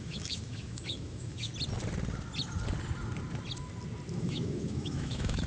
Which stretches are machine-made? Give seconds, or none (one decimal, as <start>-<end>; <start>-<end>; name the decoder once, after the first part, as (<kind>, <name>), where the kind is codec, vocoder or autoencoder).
0.0-1.5 (autoencoder, DAC-VAE); 4.1-5.5